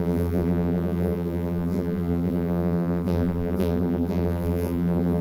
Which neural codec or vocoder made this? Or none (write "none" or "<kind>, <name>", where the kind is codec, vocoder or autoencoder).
vocoder, BigVGAN v2